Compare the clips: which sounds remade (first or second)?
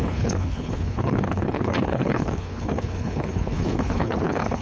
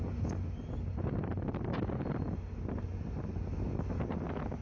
first